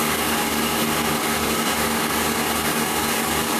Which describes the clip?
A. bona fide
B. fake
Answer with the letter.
B